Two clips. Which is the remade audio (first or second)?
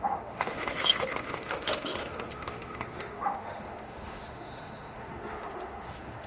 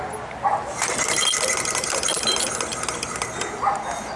first